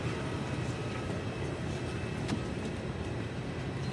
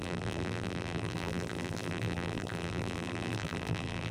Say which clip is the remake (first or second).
second